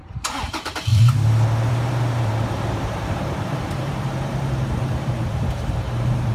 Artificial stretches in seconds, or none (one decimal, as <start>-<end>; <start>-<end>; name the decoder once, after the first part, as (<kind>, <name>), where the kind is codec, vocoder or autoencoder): 0.0-0.9 (vocoder, BigVGAN v2); 1.7-6.3